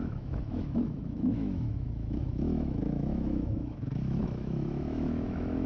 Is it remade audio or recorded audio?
remade